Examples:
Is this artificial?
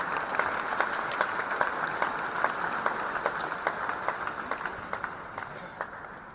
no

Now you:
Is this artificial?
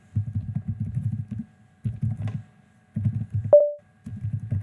no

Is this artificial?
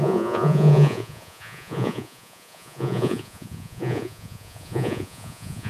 yes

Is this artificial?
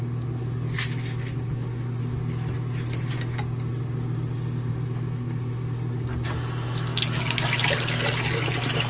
no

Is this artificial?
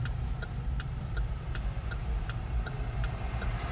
yes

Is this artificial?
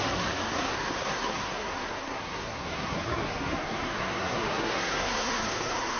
yes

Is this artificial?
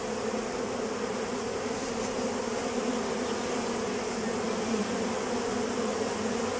no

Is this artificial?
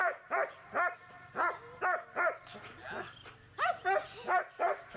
no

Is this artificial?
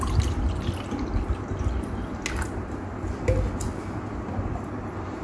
no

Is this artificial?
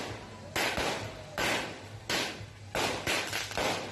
no